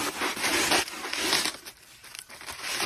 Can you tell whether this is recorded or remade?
recorded